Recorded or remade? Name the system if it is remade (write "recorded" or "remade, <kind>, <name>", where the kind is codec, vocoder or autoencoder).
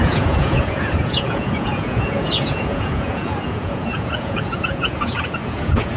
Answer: remade, vocoder, Vocos